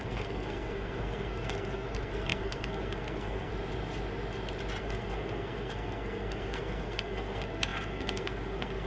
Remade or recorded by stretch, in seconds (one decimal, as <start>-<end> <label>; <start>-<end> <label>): 0.0-3.5 remade; 3.5-4.8 recorded; 4.8-8.9 remade